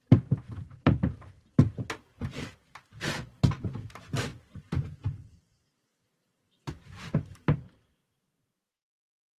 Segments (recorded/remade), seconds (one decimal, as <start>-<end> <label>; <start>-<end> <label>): 0.0-9.4 recorded